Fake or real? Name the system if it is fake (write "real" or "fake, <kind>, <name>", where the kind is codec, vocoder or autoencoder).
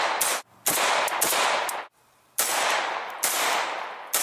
real